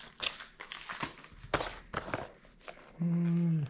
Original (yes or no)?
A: yes